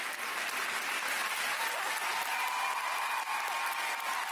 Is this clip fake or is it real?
real